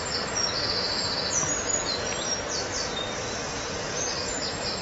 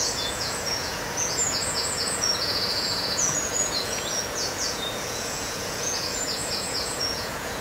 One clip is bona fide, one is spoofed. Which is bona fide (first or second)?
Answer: first